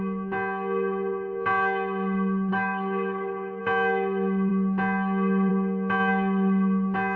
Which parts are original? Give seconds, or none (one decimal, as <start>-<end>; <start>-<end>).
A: 0.0-2.5; 3.6-7.2